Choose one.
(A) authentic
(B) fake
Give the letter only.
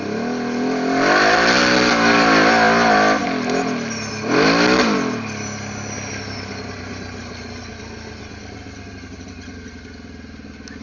A